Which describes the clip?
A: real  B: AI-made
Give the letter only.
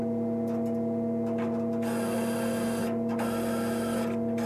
A